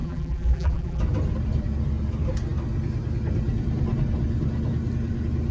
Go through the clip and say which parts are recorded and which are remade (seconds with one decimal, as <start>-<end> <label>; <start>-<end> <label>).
0.0-1.0 remade; 1.0-5.5 recorded